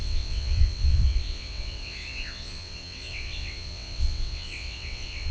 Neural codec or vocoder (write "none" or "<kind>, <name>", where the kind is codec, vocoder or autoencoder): vocoder, WaveNeXt